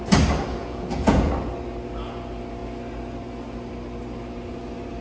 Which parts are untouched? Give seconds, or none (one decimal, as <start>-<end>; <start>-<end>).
0.0-0.5; 1.3-5.0